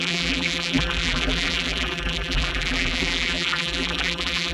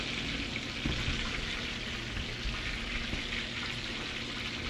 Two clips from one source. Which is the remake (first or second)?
first